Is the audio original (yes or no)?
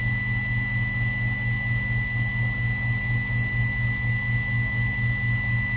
yes